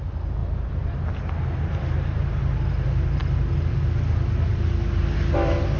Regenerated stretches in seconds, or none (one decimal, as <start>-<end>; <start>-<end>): none